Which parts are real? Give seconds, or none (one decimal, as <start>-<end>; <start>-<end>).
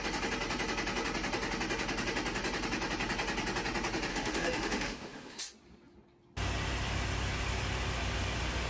0.0-4.1; 5.4-8.7